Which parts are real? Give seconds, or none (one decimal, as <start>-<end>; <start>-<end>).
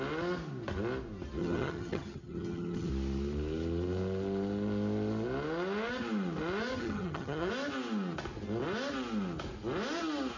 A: 0.0-1.4; 2.9-6.7; 7.5-10.4